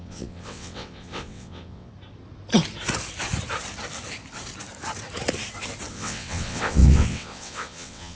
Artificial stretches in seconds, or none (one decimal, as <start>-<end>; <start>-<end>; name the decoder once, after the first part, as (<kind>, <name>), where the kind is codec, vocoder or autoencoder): 0.0-1.9 (vocoder, WaveNeXt); 5.9-8.2